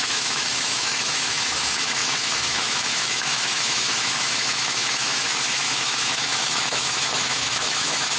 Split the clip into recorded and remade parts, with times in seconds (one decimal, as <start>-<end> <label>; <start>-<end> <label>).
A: 0.0-8.2 remade